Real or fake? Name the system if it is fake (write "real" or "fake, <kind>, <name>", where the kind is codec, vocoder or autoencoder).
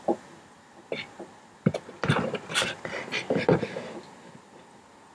real